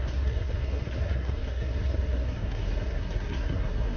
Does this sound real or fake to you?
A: fake